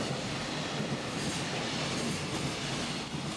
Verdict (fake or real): real